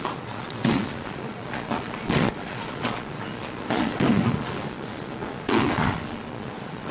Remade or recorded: remade